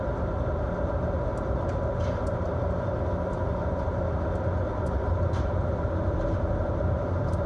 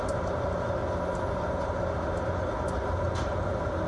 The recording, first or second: second